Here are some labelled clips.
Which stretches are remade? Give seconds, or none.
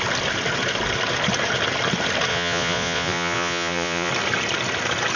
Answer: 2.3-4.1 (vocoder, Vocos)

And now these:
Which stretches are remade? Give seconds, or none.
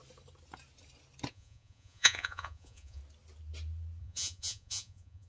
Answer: 1.3-3.0 (vocoder, Vocos); 4.0-5.3